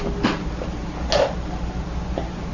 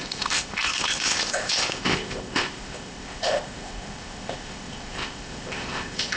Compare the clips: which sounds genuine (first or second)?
first